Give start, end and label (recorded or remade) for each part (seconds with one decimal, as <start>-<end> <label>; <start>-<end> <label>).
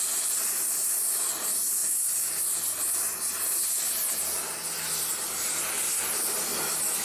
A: 0.0-7.0 recorded